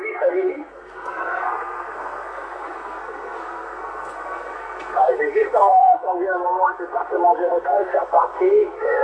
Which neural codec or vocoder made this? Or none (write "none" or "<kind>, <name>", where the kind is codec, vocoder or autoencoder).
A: codec, SNAC